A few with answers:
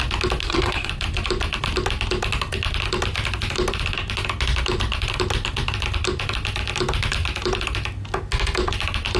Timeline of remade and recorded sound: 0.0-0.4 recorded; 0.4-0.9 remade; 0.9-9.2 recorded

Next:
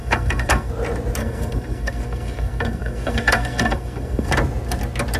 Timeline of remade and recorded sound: 0.0-0.7 remade; 0.7-1.2 recorded; 1.2-4.3 remade; 4.3-5.2 recorded

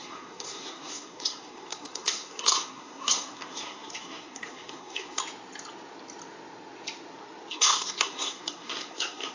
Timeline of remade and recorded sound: 0.0-5.2 remade; 5.2-7.5 recorded; 7.5-9.3 remade

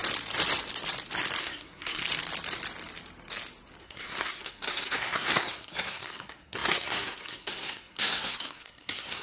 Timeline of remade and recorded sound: 0.0-1.4 recorded; 1.4-2.0 remade; 2.0-3.8 recorded; 3.8-9.2 remade

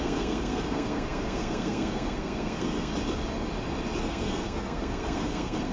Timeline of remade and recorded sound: 0.0-2.9 remade; 2.9-4.0 recorded; 4.0-5.7 remade